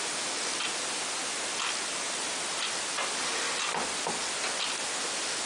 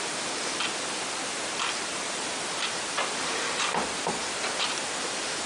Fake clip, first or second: second